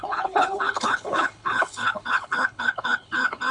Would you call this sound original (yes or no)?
no